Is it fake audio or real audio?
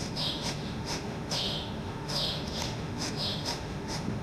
fake